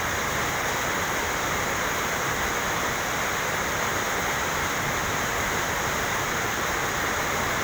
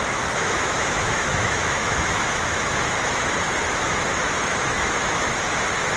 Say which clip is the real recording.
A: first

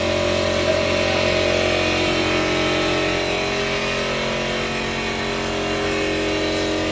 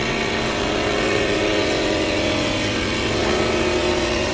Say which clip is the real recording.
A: first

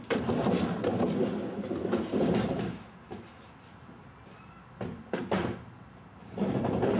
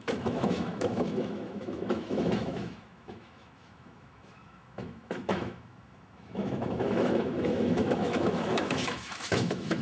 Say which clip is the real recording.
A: first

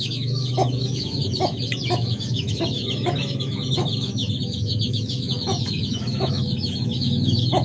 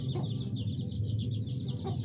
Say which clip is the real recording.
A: second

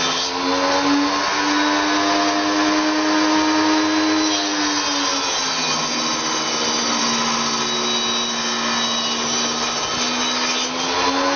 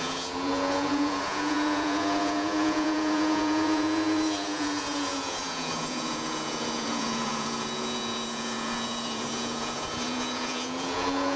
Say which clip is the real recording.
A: first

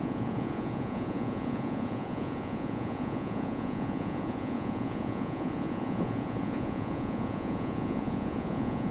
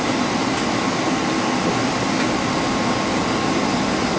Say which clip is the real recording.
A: second